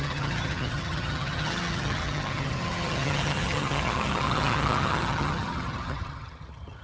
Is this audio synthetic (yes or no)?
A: yes